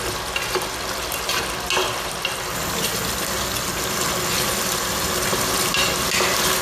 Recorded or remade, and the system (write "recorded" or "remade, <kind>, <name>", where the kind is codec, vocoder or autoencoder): recorded